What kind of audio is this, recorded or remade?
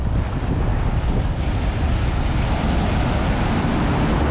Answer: recorded